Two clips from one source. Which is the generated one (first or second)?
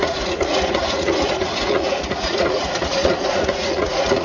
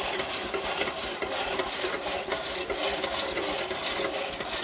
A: first